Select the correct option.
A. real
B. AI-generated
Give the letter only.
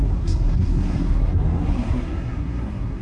B